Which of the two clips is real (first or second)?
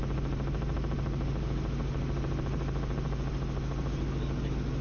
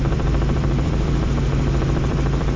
first